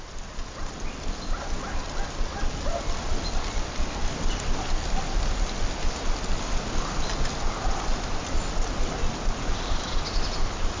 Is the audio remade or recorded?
recorded